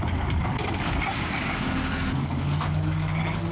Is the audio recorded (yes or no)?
no